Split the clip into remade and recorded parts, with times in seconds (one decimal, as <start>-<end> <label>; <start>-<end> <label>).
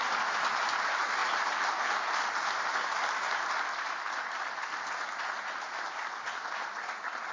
0.0-7.3 recorded